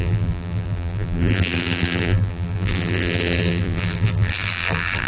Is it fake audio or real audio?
fake